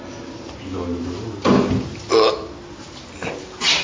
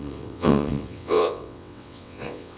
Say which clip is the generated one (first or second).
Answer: second